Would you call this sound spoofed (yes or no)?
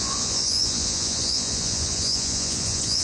yes